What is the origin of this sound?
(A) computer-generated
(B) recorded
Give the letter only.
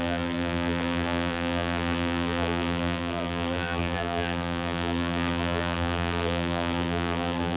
A